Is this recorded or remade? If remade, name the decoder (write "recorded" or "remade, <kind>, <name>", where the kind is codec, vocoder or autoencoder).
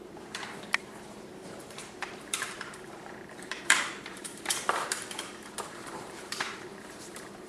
remade, vocoder, BigVGAN v2